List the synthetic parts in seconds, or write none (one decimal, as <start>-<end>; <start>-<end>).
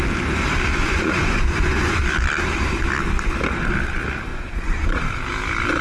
0.8-2.0; 4.3-5.0